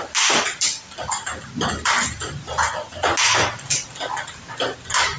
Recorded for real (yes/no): yes